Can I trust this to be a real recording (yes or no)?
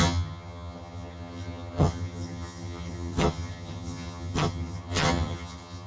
no